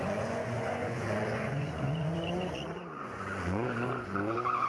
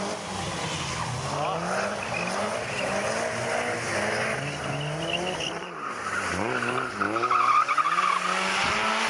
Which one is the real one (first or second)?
second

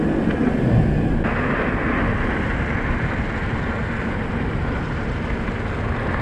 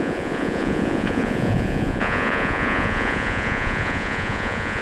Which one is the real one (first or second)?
first